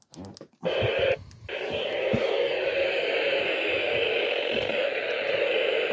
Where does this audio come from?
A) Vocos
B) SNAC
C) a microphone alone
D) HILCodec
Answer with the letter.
C